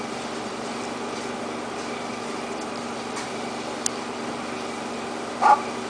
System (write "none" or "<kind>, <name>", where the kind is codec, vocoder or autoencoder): none